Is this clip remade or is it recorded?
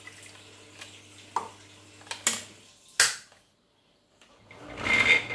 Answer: recorded